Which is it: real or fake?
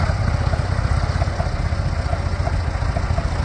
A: real